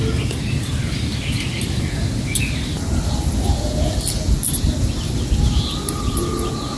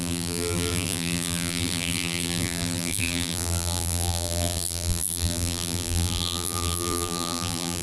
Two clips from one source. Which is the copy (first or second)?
second